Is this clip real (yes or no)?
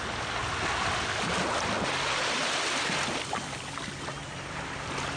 yes